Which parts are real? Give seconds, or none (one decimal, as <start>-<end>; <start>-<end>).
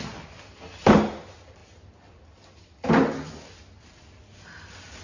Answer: 0.0-5.0